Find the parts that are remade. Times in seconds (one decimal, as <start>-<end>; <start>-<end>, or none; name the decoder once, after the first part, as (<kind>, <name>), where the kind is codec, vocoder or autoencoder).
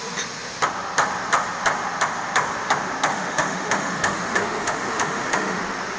3.1-5.6 (autoencoder, DAC-VAE)